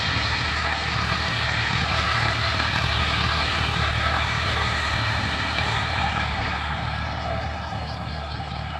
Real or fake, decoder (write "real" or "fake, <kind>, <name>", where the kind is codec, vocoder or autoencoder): fake, codec, SNAC